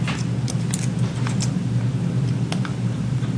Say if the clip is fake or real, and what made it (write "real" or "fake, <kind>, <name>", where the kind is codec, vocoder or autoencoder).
real